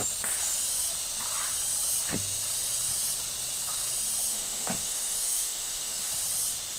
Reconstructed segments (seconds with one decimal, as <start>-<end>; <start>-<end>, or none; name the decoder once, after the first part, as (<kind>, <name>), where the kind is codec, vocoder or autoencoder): 4.3-6.1 (autoencoder, DAC-VAE)